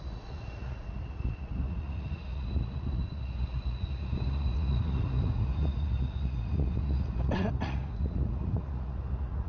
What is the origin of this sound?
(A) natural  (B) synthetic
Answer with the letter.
B